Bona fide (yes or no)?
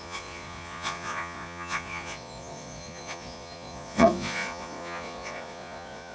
no